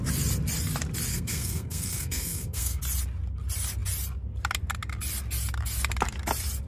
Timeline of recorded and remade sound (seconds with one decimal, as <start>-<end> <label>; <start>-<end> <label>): 0.0-1.1 recorded; 1.1-2.8 remade; 2.8-6.7 recorded